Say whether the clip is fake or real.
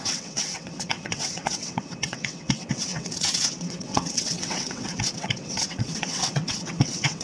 fake